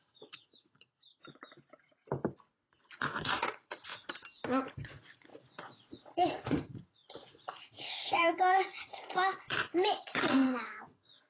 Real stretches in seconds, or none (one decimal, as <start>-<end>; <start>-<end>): 1.1-2.9; 3.9-4.7